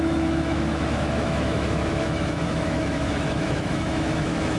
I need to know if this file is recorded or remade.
remade